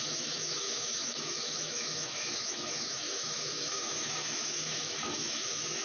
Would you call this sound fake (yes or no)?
yes